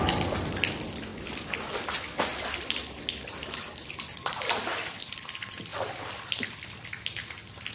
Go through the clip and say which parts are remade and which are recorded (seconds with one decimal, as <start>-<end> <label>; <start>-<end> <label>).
0.0-7.7 recorded

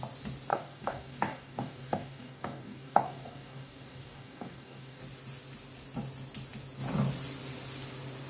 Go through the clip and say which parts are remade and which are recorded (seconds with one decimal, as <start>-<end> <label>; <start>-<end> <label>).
0.0-0.5 recorded; 0.5-5.0 remade; 5.0-8.3 recorded